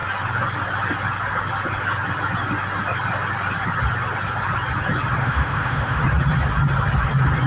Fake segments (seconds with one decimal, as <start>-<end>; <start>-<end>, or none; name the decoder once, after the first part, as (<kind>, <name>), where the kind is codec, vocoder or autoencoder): 5.2-6.0 (autoencoder, DAC-VAE)